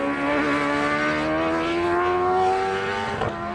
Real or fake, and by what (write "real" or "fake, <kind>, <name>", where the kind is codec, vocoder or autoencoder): real